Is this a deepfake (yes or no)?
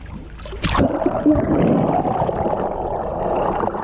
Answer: no